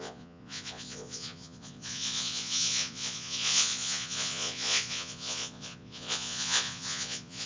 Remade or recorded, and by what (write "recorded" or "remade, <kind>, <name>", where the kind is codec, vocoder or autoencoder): remade, vocoder, Vocos